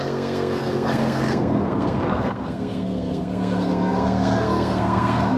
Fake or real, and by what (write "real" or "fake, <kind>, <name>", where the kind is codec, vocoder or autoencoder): fake, codec, SNAC